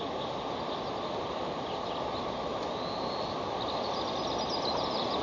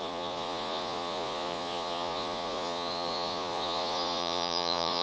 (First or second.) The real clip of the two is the first